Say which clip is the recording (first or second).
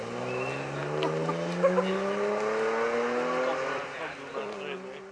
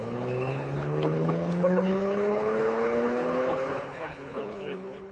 first